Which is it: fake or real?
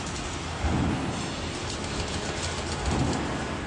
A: real